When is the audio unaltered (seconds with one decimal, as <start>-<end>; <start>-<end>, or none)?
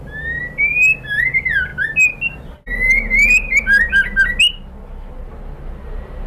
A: 0.0-6.3